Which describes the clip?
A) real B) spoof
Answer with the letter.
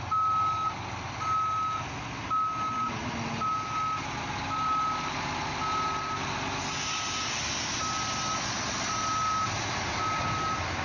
A